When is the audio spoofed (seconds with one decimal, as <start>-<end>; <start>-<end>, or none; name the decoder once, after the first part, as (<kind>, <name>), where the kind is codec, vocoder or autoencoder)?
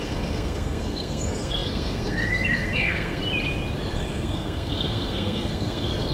0.0-3.2 (codec, SNAC); 3.9-6.1